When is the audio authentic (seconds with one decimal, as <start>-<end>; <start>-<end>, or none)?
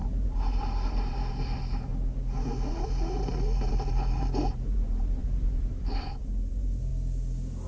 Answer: 1.9-2.7; 6.9-7.7